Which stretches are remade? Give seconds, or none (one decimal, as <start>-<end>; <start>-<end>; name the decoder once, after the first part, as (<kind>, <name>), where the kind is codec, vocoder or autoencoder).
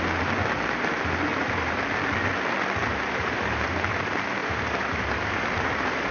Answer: 1.3-1.8 (vocoder, BigVGAN v2); 2.8-3.9; 4.4-6.1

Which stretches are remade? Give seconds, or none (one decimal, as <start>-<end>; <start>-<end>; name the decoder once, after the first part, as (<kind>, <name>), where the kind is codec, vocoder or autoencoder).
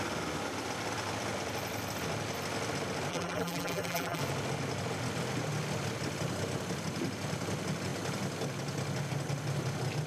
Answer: 3.1-4.2 (vocoder, BigVGAN v2)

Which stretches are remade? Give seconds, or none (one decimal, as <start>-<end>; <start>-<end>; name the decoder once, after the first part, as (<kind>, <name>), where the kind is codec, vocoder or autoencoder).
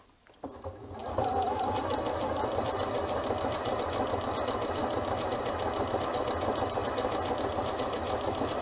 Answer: 1.0-1.8 (vocoder, BigVGAN v2); 6.8-7.3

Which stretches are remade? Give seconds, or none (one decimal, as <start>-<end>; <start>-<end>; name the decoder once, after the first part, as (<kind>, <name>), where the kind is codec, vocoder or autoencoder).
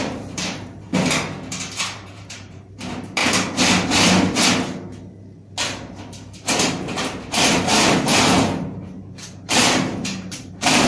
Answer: 0.0-0.9 (vocoder, BigVGAN v2); 1.8-3.2; 8.4-10.9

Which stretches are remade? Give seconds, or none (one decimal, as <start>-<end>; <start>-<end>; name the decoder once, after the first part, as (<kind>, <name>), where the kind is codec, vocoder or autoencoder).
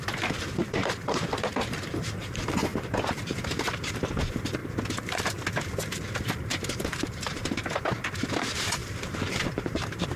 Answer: 0.0-4.6 (vocoder, BigVGAN v2); 6.2-10.2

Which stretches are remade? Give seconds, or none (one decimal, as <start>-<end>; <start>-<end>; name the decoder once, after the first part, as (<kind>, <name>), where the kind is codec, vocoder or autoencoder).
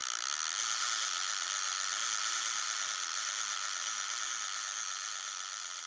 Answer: 0.6-5.9 (vocoder, BigVGAN v2)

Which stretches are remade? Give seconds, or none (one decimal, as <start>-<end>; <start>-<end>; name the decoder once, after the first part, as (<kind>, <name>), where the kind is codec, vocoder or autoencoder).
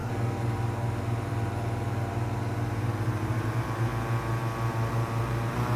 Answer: 0.0-3.9 (vocoder, BigVGAN v2); 4.9-5.8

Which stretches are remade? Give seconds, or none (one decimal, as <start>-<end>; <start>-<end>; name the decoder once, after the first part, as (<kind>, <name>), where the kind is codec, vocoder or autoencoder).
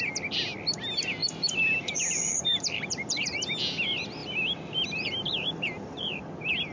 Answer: 1.2-3.4 (vocoder, BigVGAN v2); 4.2-6.2